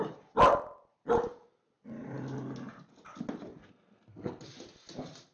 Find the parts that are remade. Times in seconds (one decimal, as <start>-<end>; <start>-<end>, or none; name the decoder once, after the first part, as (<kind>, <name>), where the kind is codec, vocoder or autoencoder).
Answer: 3.6-4.4 (codec, SNAC)